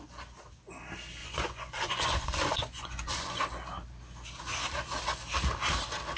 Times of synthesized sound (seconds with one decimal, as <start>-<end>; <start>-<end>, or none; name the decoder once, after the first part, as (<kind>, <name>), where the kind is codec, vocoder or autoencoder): 1.2-3.4 (vocoder, Vocos)